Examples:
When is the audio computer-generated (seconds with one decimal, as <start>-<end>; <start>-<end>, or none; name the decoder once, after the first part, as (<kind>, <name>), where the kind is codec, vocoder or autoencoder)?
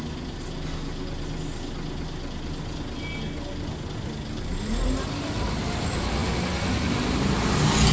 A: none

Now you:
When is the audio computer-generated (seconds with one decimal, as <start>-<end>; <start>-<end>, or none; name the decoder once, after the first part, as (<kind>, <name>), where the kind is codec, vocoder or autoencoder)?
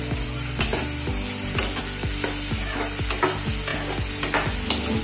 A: none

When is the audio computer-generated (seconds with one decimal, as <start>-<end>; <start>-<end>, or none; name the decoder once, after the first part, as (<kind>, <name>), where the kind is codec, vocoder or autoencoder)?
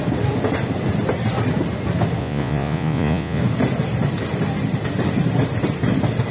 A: 2.2-3.4 (vocoder, Vocos)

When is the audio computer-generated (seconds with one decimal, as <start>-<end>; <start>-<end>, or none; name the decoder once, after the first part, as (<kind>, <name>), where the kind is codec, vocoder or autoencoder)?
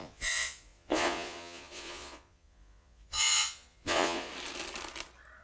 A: 0.0-4.3 (vocoder, Vocos)